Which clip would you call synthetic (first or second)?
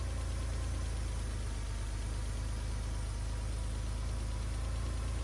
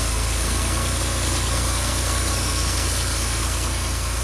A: second